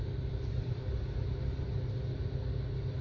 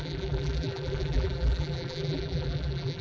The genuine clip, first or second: first